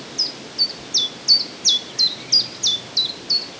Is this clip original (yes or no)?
yes